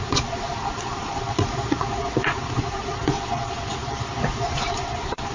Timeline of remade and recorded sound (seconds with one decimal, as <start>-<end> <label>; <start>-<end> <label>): 0.0-5.3 remade